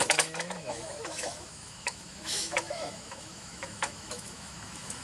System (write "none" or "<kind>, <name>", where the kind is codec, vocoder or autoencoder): autoencoder, DAC-VAE